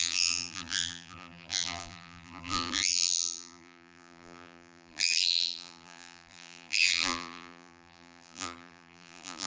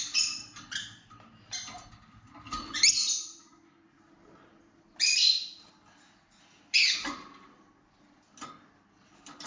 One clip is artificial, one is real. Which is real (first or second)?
second